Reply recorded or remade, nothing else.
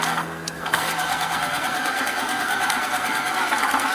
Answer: remade